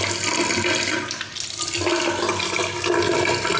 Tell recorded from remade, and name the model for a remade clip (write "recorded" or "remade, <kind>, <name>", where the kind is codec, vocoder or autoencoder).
recorded